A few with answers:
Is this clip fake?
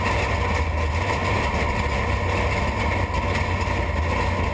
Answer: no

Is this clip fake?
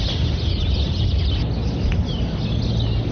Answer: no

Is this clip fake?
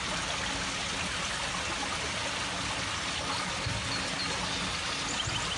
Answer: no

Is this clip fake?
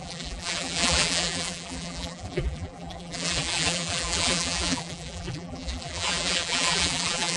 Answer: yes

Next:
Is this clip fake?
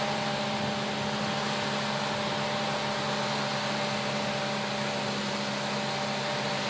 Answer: no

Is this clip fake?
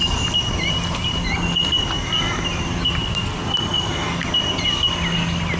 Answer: no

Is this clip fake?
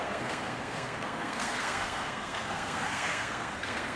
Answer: yes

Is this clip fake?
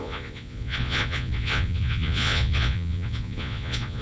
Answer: yes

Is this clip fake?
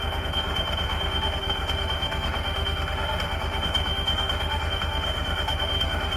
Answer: yes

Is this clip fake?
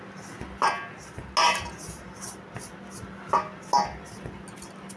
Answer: no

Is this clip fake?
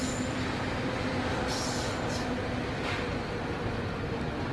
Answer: no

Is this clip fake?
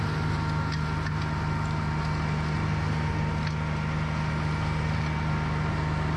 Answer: no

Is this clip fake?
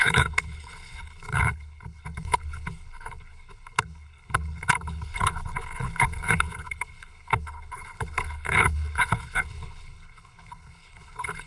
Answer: yes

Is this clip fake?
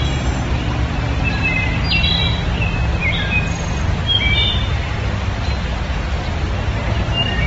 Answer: no